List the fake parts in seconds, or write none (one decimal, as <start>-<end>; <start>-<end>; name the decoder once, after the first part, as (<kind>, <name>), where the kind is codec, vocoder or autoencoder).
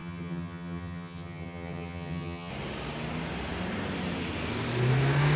0.0-2.5 (vocoder, HiFi-GAN)